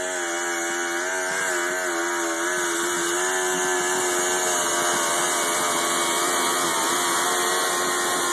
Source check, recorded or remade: recorded